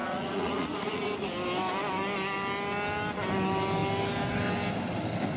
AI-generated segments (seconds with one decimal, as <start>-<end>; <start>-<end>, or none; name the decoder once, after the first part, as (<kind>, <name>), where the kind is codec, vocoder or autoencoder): 0.0-1.3 (vocoder, Vocos)